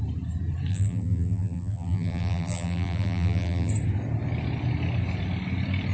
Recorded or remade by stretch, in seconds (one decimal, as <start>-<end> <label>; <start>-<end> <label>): 0.0-0.7 recorded; 0.7-3.7 remade; 3.7-5.9 recorded